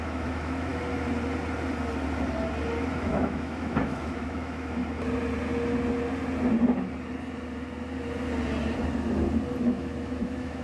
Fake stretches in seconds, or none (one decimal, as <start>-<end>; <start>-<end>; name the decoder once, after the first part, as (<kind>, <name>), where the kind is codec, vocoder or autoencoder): 0.0-0.7 (autoencoder, DAC-VAE); 3.1-4.8; 9.6-10.6